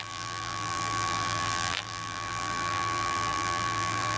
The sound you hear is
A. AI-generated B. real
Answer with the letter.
A